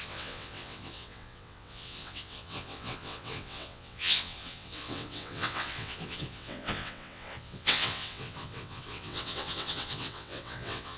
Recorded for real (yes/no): no